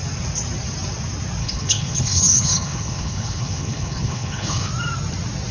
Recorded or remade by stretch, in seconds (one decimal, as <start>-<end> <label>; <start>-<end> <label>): 0.0-1.4 recorded; 1.4-4.7 remade; 4.7-5.5 recorded